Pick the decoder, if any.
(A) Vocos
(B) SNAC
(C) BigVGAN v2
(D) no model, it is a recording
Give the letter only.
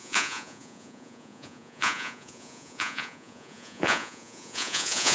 A